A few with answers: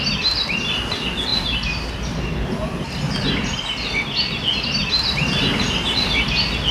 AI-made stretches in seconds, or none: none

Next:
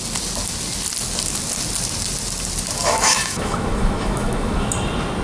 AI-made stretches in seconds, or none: 2.8-4.7 (autoencoder, DAC-VAE)

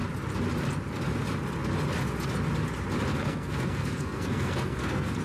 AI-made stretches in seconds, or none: 3.1-5.2 (codec, SNAC)

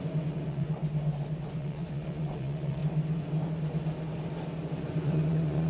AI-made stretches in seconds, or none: 0.0-0.8 (vocoder, Vocos); 1.4-2.8; 4.7-5.7

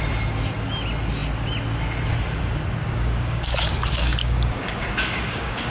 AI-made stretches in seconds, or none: 2.8-5.7 (codec, DAC)

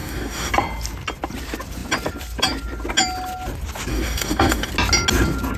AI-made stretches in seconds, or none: 0.0-0.5 (codec, DAC); 3.9-4.7